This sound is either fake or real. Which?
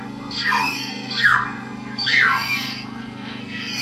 fake